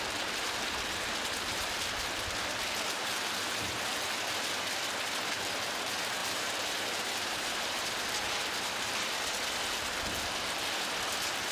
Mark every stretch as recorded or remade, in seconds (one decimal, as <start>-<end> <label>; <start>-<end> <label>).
0.0-6.2 recorded; 6.2-7.9 remade; 7.9-11.5 recorded